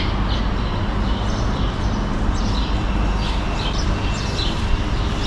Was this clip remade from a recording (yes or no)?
no